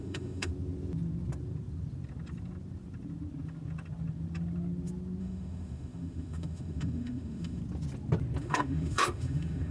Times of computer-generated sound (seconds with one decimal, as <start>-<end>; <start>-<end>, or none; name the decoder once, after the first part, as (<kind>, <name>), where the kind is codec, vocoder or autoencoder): 0.0-0.5 (autoencoder, DAC-VAE); 5.2-7.6; 8.4-9.7